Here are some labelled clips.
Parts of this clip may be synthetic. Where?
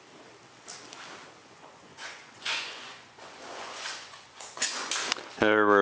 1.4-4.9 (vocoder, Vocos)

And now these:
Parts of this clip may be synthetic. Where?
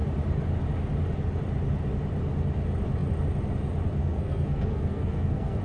4.0-5.6 (codec, SNAC)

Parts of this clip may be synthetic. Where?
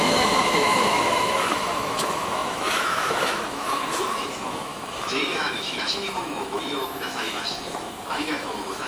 0.0-8.9 (autoencoder, DAC-VAE)